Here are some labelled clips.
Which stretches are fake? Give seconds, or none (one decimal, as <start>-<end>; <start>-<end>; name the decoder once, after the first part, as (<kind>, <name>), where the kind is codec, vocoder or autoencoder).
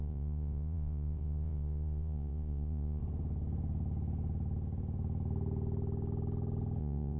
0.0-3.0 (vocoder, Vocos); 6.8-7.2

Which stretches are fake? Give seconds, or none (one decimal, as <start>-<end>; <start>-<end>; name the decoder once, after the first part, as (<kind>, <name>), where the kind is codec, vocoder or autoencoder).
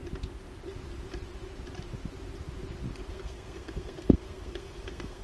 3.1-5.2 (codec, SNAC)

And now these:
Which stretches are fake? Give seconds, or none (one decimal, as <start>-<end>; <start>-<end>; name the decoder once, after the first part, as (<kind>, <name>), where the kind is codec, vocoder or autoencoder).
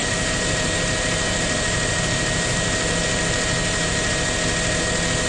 0.0-3.2 (vocoder, BigVGAN v2); 3.6-4.1